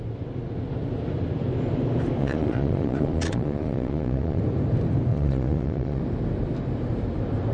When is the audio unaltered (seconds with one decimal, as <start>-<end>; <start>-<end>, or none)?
0.0-2.2; 4.4-5.1; 6.0-7.5